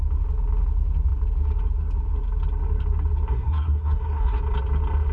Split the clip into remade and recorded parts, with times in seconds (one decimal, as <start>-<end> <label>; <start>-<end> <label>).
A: 0.0-3.3 recorded; 3.3-4.4 remade; 4.4-5.1 recorded